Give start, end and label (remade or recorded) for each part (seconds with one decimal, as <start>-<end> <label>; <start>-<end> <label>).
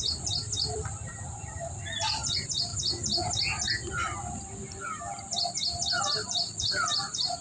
0.0-2.7 remade; 2.7-6.0 recorded; 6.0-7.4 remade